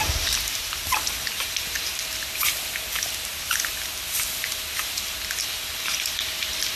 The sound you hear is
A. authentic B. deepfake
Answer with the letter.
A